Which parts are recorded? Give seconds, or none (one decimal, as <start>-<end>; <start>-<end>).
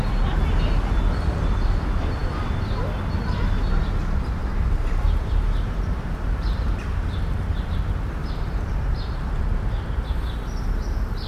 0.0-4.4; 7.7-8.2; 9.4-11.3